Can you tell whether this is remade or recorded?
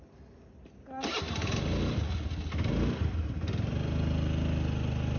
recorded